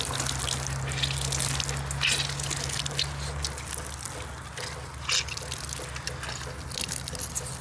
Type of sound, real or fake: real